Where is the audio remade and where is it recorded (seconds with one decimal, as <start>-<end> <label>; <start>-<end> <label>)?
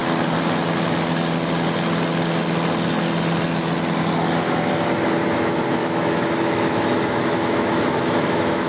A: 0.0-5.8 recorded; 5.8-8.7 remade